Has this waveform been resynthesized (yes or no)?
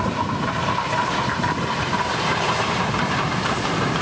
yes